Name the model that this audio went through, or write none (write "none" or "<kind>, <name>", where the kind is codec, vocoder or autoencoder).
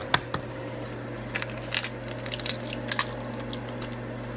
none